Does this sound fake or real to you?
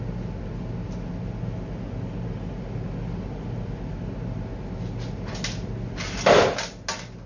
real